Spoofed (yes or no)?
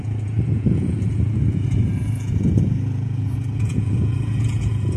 yes